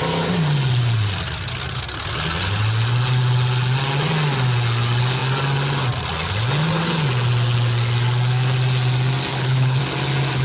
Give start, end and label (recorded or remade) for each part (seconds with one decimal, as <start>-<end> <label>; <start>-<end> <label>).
0.0-9.3 recorded; 9.3-9.8 remade; 9.8-10.4 recorded